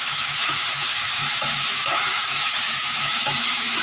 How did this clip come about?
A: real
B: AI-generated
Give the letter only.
B